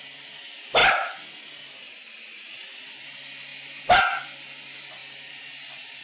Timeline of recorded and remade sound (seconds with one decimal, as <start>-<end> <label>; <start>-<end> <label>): 0.0-6.0 recorded